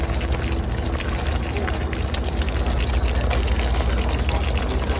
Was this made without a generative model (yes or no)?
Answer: yes